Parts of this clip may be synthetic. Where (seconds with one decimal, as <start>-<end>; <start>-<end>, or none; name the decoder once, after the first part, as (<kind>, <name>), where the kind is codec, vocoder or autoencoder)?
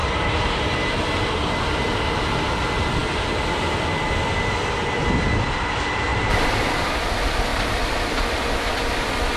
0.0-1.2 (vocoder, BigVGAN v2); 6.1-6.7; 7.5-8.1